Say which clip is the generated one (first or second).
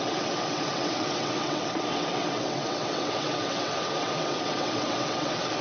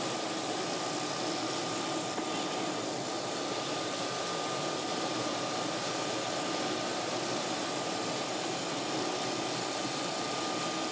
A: first